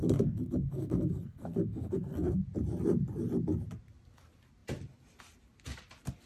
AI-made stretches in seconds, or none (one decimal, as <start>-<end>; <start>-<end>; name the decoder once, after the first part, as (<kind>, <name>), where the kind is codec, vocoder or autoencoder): 0.0-2.4 (codec, SNAC)